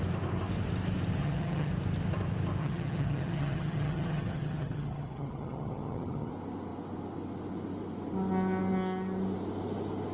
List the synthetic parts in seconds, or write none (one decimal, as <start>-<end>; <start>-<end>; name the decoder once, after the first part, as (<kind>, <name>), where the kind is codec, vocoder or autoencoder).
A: 1.2-1.7 (vocoder, HiFi-GAN); 2.6-6.3